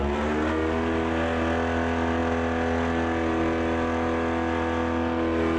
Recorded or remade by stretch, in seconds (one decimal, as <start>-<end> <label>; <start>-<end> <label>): 0.0-5.6 recorded